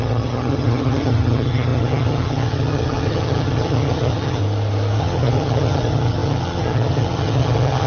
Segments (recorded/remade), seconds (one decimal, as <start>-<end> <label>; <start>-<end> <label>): 0.0-4.4 remade; 4.4-5.0 recorded; 5.0-7.9 remade